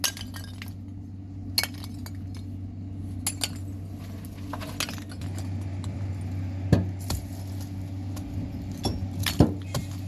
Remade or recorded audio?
recorded